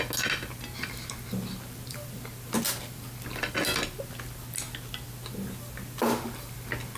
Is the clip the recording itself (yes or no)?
yes